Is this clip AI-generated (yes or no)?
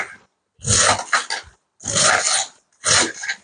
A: no